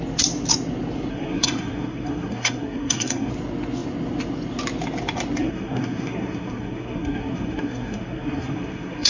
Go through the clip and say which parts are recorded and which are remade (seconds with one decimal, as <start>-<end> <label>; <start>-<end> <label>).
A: 0.0-1.1 recorded; 1.1-3.3 remade; 3.3-5.4 recorded; 5.4-9.1 remade